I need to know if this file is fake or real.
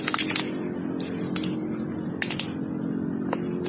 real